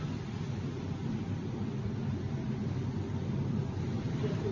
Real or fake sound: real